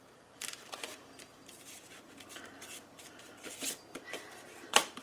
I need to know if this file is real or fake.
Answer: fake